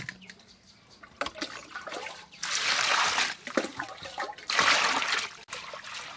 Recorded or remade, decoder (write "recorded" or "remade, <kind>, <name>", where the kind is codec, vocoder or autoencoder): recorded